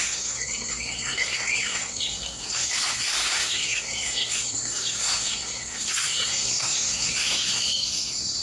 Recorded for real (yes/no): no